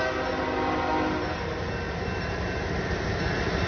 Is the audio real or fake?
real